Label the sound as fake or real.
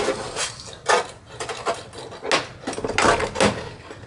real